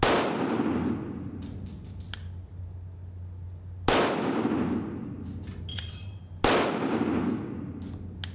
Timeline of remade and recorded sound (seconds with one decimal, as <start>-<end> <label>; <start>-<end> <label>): 0.0-5.7 recorded; 5.7-6.2 remade; 6.2-8.3 recorded